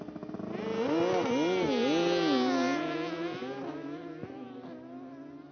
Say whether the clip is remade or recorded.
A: recorded